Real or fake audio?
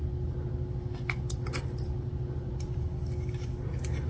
real